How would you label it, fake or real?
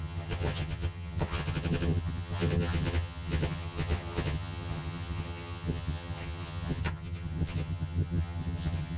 fake